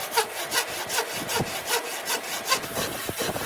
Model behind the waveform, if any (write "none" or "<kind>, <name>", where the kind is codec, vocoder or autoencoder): none